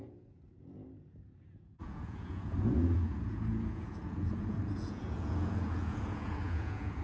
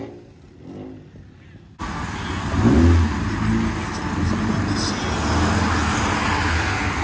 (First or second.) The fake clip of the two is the first